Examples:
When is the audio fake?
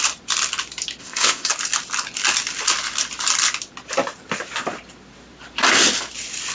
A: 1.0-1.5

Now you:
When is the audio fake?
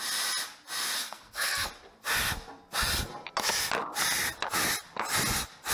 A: 1.0-1.7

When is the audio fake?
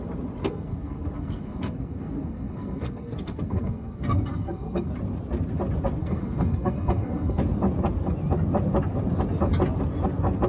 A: 0.4-4.9; 6.0-7.4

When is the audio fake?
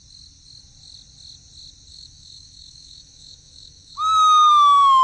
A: 1.9-4.5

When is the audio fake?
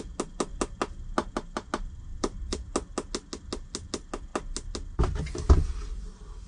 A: 2.1-2.7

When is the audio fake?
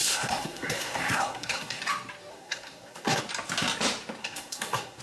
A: 0.0-1.8; 2.3-3.2; 4.2-5.0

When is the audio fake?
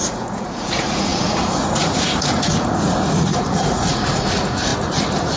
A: 0.0-5.4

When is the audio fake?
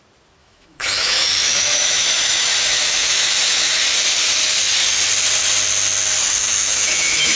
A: 0.4-3.8; 6.2-7.4